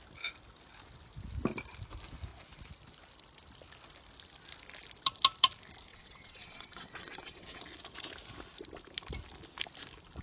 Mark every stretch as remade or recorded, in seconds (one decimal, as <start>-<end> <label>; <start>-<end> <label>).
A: 0.0-5.9 recorded; 5.9-7.6 remade; 7.6-10.2 recorded